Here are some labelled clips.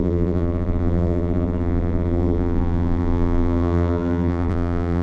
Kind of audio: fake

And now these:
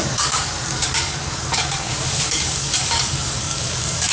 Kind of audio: fake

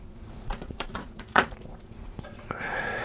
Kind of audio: fake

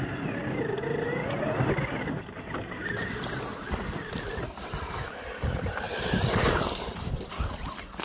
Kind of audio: real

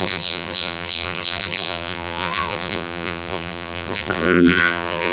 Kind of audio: fake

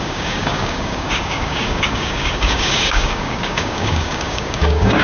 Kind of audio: fake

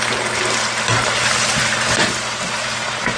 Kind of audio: real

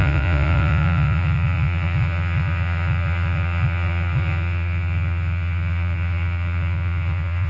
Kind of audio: fake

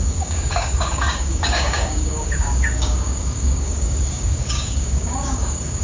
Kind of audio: fake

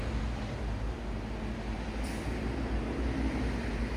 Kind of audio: real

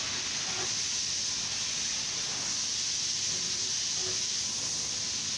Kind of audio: real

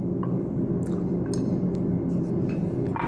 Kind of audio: real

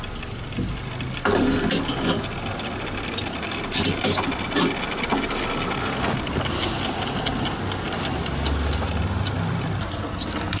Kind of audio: real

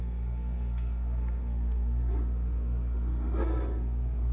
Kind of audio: fake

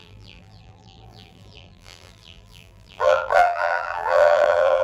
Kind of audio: fake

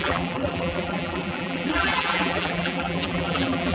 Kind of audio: fake